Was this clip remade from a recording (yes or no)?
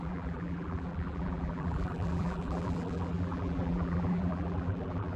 yes